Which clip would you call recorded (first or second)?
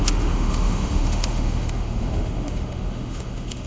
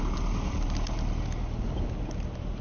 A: second